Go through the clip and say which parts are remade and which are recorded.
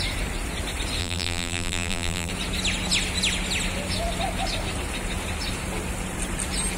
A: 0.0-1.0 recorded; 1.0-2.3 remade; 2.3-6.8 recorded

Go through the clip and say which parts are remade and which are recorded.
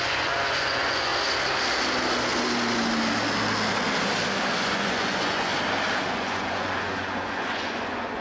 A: 0.0-1.1 remade; 1.1-4.6 recorded; 4.6-5.5 remade; 5.5-6.1 recorded; 6.1-8.2 remade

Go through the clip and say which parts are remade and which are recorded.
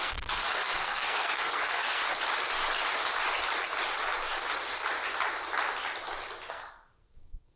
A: 0.0-2.0 remade; 2.0-6.5 recorded; 6.5-7.6 remade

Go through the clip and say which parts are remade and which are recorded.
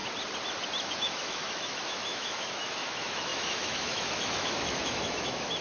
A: 0.0-0.9 recorded; 0.9-5.6 remade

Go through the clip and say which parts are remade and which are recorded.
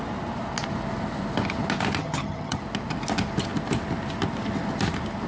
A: 0.0-2.0 recorded; 2.0-2.6 remade; 2.6-5.3 recorded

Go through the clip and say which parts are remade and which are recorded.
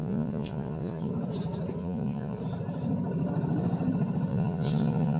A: 0.0-1.1 remade; 1.1-1.8 recorded; 1.8-2.4 remade; 2.4-4.3 recorded; 4.3-5.2 remade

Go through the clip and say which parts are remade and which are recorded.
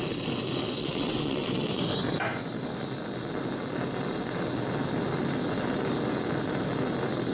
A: 0.0-0.8 recorded; 0.8-1.8 remade; 1.8-7.3 recorded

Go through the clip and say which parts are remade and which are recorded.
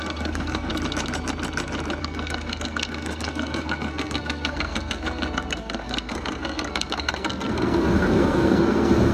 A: 0.0-0.7 remade; 0.7-2.0 recorded; 2.0-9.1 remade